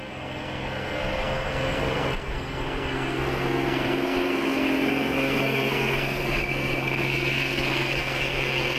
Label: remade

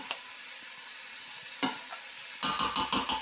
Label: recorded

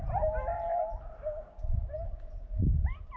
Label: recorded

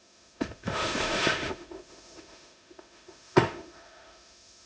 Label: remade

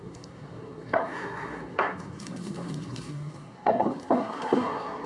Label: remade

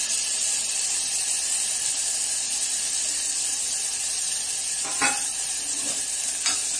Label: recorded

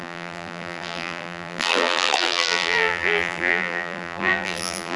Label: remade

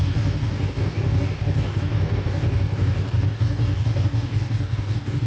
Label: remade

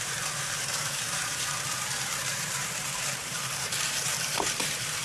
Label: remade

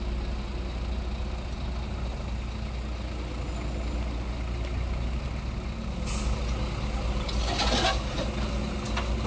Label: recorded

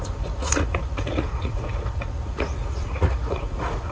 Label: remade